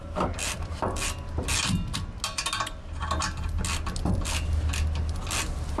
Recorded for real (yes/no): yes